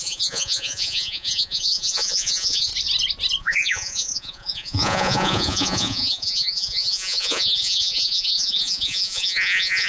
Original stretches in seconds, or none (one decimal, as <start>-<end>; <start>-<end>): 2.7-3.4